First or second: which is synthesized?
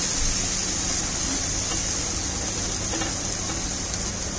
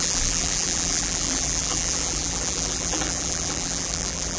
second